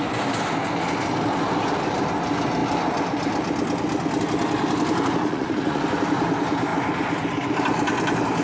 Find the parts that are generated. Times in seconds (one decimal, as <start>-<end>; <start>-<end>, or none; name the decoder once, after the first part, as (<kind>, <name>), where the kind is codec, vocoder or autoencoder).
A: 5.2-5.8 (vocoder, Vocos)